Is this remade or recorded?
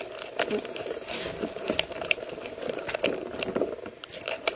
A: recorded